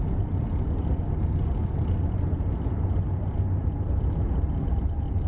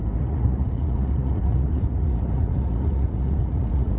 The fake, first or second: second